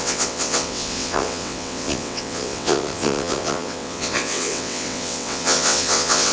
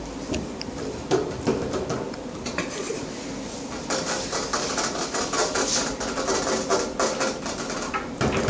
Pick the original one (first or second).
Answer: second